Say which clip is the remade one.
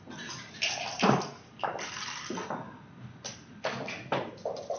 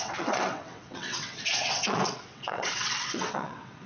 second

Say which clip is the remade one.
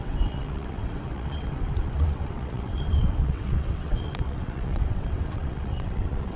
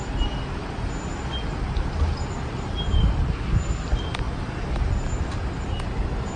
first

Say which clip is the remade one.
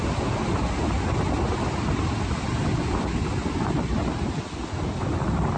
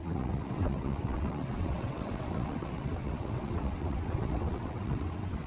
second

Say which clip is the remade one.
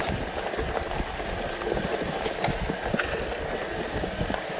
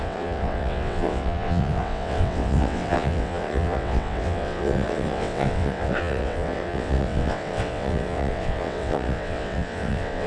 second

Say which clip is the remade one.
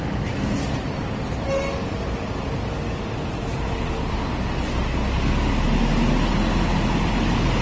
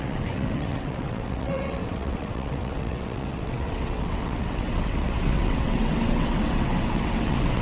second